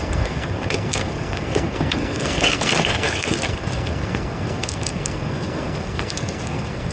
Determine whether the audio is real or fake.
fake